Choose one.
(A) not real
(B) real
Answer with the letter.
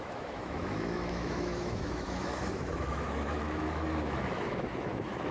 A